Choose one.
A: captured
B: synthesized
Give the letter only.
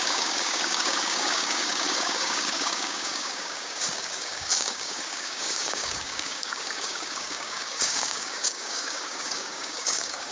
B